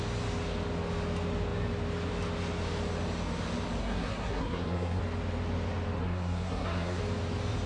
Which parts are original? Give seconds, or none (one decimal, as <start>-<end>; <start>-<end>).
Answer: 0.0-3.8; 5.0-6.0; 7.0-7.7